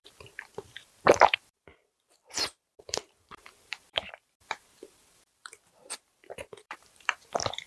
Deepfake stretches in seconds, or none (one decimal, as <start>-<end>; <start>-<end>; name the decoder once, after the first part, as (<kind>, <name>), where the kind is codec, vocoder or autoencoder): 0.0-7.7 (vocoder, BigVGAN v2)